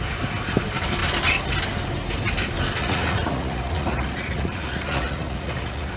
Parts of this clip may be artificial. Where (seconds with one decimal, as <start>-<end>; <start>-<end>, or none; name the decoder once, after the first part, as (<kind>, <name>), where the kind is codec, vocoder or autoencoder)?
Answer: 2.8-6.0 (vocoder, Vocos)